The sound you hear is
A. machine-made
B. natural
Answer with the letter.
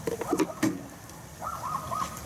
B